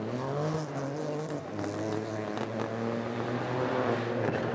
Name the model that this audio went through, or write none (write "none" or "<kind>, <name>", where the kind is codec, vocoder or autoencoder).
none